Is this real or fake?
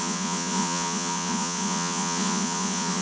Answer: fake